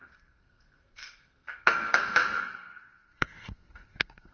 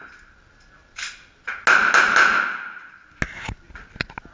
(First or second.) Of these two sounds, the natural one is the second